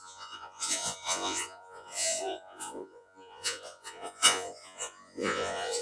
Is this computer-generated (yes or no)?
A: yes